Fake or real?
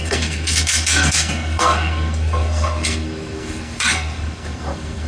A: fake